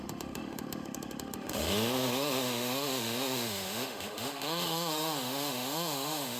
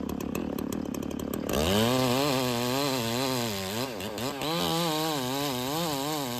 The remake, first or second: first